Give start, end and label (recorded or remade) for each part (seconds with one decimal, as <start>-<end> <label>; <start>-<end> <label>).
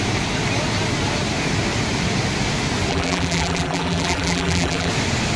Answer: 0.0-2.9 recorded; 2.9-4.9 remade; 4.9-5.4 recorded